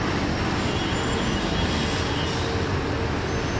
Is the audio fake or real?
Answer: real